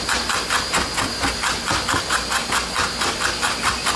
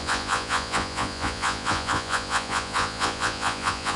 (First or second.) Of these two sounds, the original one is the first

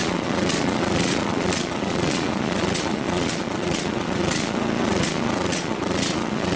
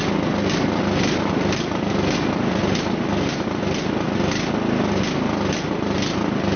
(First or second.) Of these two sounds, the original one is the second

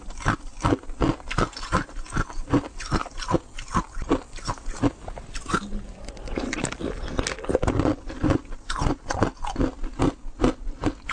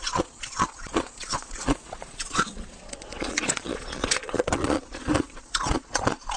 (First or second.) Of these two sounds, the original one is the first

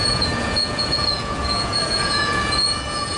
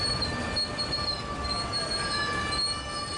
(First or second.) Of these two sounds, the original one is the second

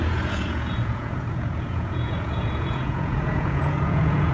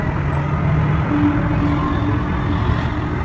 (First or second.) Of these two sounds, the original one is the second